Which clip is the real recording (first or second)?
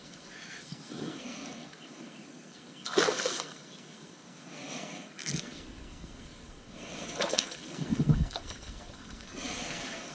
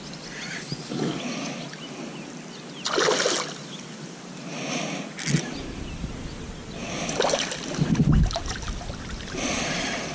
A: second